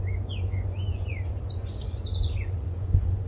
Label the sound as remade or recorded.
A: remade